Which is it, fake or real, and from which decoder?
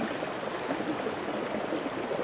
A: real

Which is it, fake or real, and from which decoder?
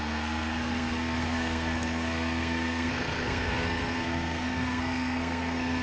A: fake, codec, SNAC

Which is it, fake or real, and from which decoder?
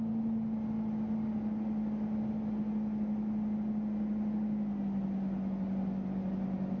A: real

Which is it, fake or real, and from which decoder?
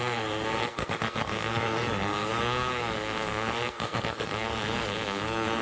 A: fake, codec, SNAC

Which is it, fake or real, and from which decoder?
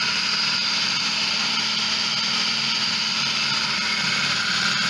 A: real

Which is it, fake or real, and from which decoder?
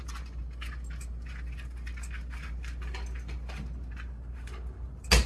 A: real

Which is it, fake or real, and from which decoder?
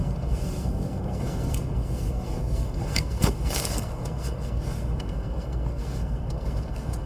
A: fake, codec, SNAC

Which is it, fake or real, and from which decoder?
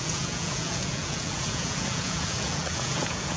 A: fake, vocoder, Vocos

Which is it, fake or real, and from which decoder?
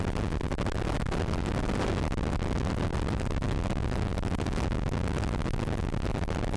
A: real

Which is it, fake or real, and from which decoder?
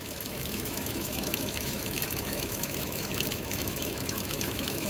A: fake, autoencoder, DAC-VAE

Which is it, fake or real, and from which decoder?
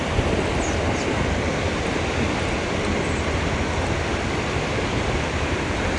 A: real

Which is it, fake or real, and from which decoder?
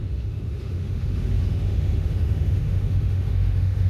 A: fake, autoencoder, DAC-VAE